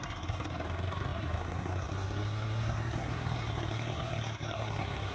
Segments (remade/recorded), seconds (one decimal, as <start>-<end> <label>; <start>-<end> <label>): 0.0-5.1 remade